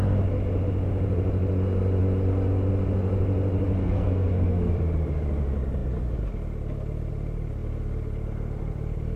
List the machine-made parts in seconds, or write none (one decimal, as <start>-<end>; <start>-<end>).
3.8-4.7